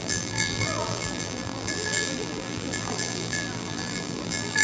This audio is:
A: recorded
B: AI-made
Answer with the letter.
B